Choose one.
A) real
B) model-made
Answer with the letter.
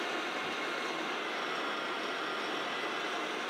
A